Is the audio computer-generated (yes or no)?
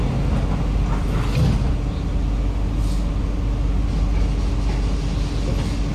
no